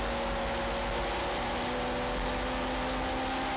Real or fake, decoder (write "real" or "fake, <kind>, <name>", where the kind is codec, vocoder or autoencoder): real